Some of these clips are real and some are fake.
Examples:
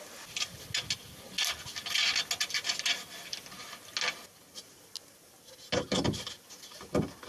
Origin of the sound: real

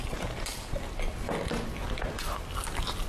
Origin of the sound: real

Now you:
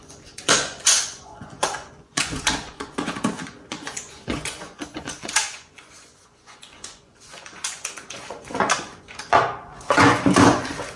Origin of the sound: fake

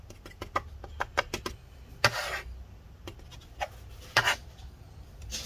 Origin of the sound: real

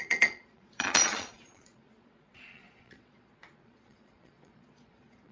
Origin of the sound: fake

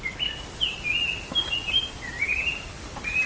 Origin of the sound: real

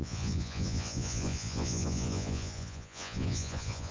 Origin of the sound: fake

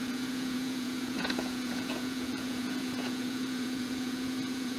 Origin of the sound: fake